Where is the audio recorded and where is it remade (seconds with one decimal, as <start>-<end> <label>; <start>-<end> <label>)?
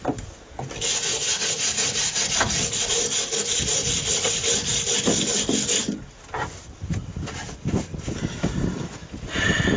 0.0-1.1 recorded; 1.1-2.0 remade; 2.0-9.8 recorded